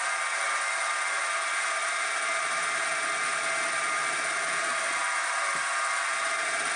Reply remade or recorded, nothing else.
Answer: recorded